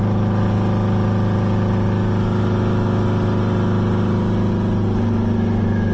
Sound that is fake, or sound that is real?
real